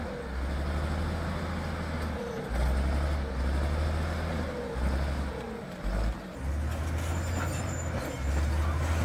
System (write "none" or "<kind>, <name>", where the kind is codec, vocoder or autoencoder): none